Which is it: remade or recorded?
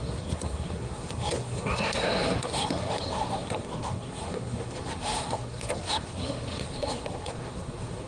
remade